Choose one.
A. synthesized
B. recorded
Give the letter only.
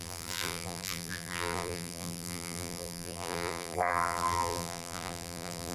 A